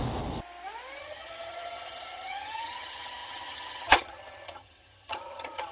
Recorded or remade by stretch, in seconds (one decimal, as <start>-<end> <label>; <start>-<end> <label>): 0.0-1.0 recorded; 1.0-5.7 remade